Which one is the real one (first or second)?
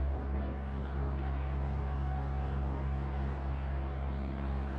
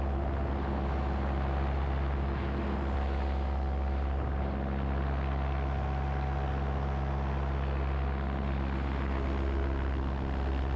second